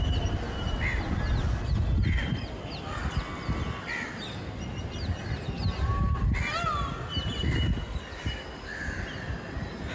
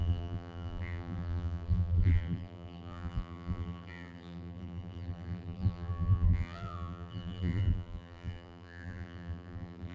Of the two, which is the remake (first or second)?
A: second